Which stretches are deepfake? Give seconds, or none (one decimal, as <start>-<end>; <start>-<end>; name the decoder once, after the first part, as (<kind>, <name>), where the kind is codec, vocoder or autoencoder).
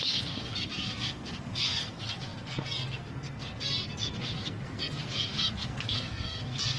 0.0-6.8 (codec, SNAC)